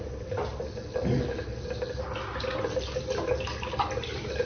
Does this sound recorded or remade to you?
recorded